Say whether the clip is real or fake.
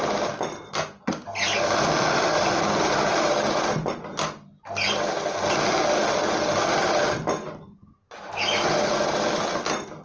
real